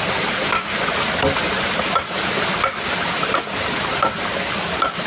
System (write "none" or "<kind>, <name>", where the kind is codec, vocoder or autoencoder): none